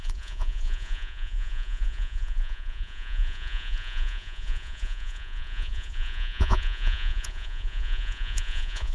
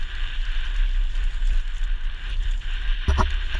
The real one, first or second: second